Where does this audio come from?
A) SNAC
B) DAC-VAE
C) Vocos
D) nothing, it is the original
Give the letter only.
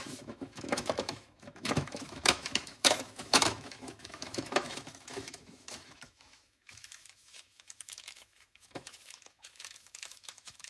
B